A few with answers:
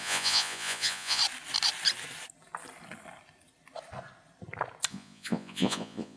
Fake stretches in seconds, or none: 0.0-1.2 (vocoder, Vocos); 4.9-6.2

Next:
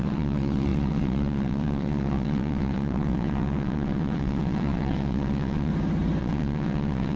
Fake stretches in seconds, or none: 0.0-5.7 (vocoder, WaveNeXt); 6.2-7.2

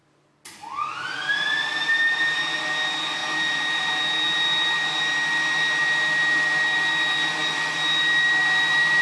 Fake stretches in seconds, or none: none

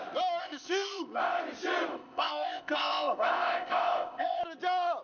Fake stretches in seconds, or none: 0.4-1.4 (codec, ZipCodec); 1.9-4.4

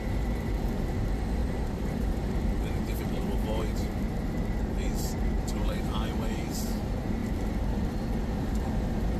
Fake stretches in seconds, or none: 1.4-6.6 (vocoder, BigVGAN v2); 7.2-8.7

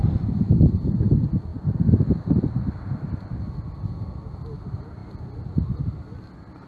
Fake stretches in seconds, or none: none